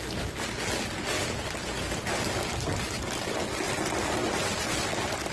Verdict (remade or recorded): recorded